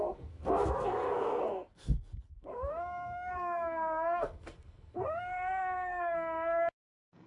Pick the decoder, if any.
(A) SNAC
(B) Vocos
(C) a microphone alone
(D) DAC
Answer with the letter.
A